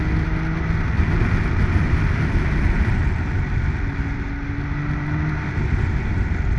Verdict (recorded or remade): recorded